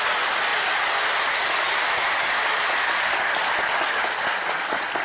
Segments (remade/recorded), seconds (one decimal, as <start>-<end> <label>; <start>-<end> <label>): 0.0-5.0 recorded